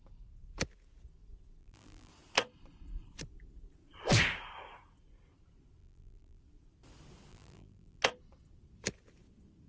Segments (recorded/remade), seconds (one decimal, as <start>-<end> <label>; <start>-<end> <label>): 0.0-1.6 recorded; 1.6-2.1 remade; 2.1-5.8 recorded; 5.8-6.4 remade; 6.4-7.3 recorded; 7.3-8.0 remade; 8.0-9.7 recorded